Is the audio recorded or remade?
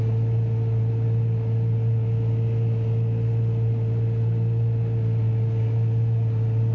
recorded